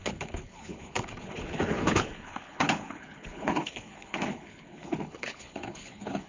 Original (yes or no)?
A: no